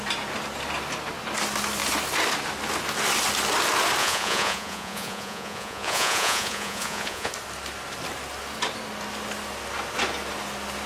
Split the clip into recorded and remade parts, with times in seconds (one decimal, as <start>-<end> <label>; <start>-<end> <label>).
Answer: 0.0-4.0 recorded; 4.0-7.3 remade; 7.3-10.9 recorded